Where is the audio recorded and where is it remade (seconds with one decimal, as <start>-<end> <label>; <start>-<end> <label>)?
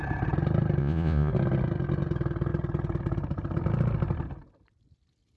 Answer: 0.0-0.8 recorded; 0.8-1.3 remade; 1.3-5.4 recorded